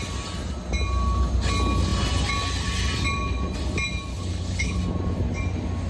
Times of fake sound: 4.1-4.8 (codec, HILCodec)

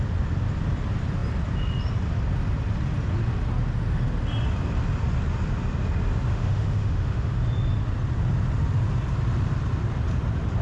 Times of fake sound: 6.3-7.4 (autoencoder, DAC-VAE)

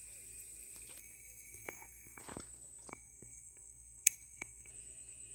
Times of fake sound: 1.0-2.2 (codec, SNAC); 2.9-4.7

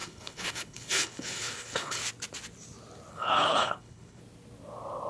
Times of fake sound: 0.0-2.0 (codec, HILCodec); 3.1-4.2

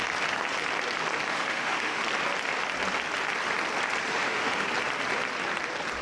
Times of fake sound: 1.3-2.0 (autoencoder, DAC-VAE); 4.1-4.7